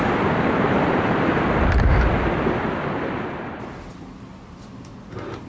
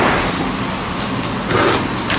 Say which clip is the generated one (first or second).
first